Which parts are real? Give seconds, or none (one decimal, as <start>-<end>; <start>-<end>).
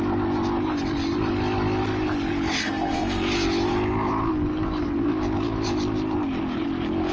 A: 0.0-2.6; 3.2-7.1